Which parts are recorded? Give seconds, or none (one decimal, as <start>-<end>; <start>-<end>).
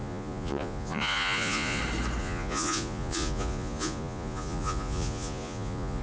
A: 1.8-2.2